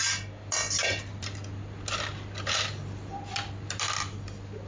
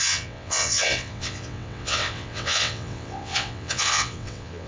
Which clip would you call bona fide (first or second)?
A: first